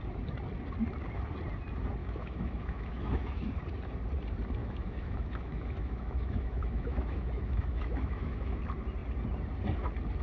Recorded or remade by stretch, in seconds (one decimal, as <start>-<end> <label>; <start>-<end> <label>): 0.0-2.0 recorded; 2.0-3.5 remade; 3.5-4.6 recorded; 4.6-8.6 remade; 8.6-10.2 recorded